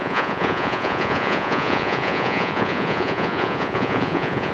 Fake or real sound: fake